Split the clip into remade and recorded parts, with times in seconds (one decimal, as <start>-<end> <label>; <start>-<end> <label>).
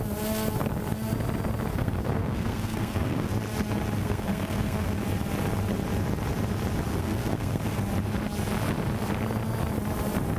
0.0-1.7 recorded; 1.7-3.3 remade; 3.3-4.0 recorded; 4.0-5.0 remade; 5.0-6.9 recorded; 6.9-7.8 remade; 7.8-10.4 recorded